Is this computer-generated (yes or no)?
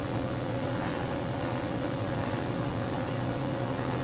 yes